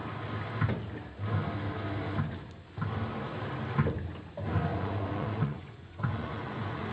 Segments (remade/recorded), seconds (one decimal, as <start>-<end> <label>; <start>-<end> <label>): 0.0-4.7 recorded; 4.7-6.9 remade